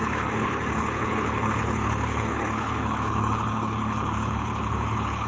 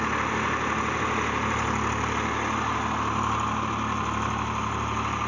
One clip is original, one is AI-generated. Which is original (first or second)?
second